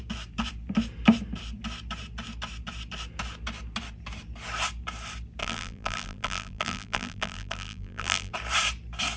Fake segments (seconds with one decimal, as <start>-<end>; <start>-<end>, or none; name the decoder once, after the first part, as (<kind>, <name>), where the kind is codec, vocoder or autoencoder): 5.4-8.3 (vocoder, BigVGAN v2)